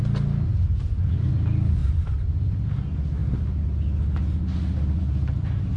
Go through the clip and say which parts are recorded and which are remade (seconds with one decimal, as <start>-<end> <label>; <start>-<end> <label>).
0.0-5.8 recorded